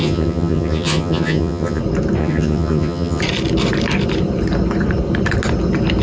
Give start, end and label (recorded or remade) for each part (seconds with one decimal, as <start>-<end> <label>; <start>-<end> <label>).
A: 0.0-1.8 remade; 1.8-2.2 recorded; 2.2-3.2 remade; 3.2-6.0 recorded